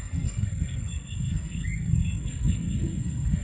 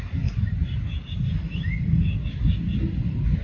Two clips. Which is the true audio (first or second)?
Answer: second